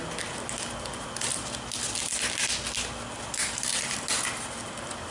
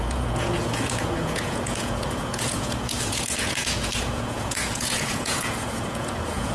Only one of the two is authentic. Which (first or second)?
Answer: first